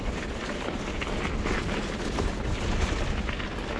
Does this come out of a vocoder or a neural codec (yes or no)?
no